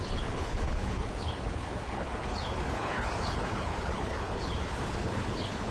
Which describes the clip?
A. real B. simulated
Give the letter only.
B